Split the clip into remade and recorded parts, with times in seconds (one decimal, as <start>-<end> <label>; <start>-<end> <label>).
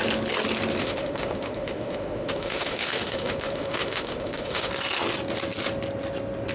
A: 0.0-0.8 recorded; 0.8-4.7 remade; 4.7-6.5 recorded